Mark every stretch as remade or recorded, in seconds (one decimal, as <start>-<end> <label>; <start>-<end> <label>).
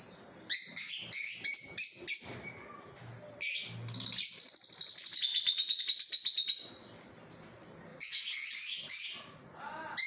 0.0-5.3 recorded; 5.3-5.8 remade; 5.8-7.9 recorded; 7.9-9.6 remade; 9.6-10.1 recorded